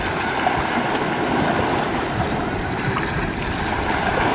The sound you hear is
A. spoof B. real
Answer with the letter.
B